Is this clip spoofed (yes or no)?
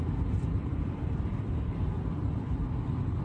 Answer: yes